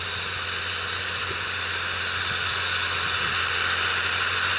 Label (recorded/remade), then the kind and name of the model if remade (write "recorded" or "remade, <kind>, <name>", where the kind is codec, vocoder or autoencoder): recorded